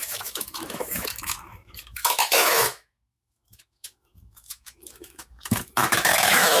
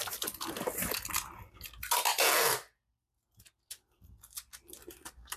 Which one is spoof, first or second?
first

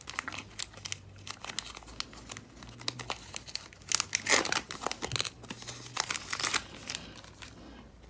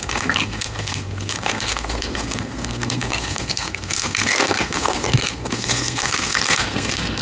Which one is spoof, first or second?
second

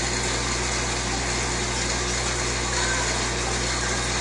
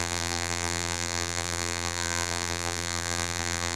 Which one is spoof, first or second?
second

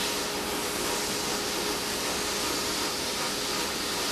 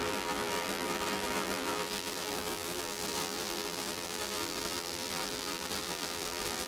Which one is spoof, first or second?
second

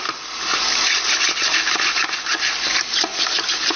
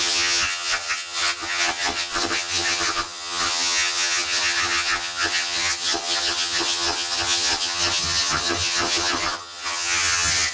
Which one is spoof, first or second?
second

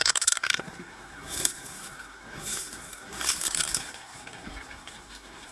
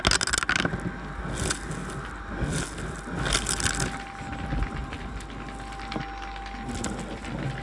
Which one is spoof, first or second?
first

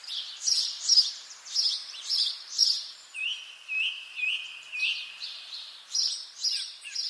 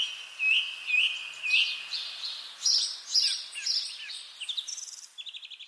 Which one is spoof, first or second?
first